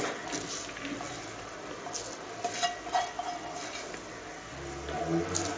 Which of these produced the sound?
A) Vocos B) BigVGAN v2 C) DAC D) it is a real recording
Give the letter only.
D